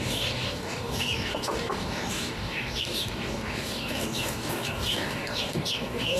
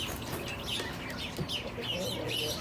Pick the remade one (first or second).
first